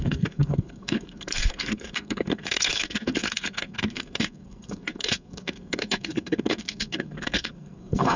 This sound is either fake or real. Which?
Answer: fake